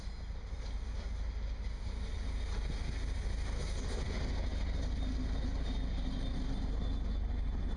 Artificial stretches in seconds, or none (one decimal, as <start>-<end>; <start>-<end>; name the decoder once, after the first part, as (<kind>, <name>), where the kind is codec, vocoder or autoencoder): none